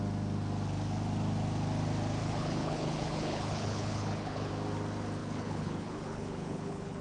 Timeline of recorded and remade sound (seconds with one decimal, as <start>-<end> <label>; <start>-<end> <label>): 0.0-2.2 recorded; 2.2-4.5 remade; 4.5-5.2 recorded; 5.2-7.0 remade